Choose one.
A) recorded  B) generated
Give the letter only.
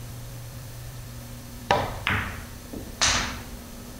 B